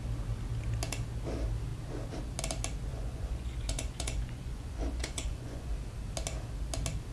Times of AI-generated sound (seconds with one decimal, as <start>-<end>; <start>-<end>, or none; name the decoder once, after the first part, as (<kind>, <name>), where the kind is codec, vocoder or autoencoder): 2.9-5.7 (vocoder, Vocos)

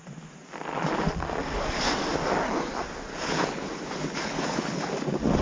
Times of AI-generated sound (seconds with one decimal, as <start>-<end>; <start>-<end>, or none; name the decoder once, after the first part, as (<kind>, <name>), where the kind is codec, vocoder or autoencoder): 3.1-4.9 (codec, HILCodec)

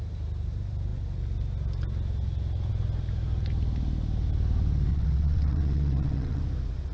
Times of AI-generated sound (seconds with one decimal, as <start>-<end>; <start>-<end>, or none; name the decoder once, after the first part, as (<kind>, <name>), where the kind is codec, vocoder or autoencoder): 4.9-6.4 (vocoder, WaveNeXt)

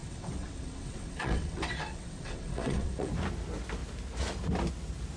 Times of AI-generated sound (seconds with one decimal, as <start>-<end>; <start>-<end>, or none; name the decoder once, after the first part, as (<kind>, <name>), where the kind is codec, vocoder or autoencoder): 0.0-3.1 (vocoder, WaveNeXt)